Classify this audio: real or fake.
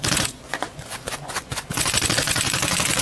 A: fake